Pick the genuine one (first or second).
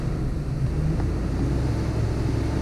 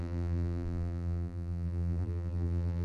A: first